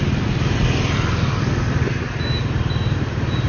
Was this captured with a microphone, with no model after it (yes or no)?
yes